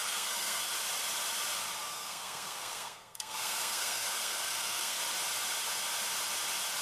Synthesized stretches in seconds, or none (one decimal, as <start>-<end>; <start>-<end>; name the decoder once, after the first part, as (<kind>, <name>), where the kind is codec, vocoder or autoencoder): 0.0-0.6 (codec, SNAC); 1.9-5.0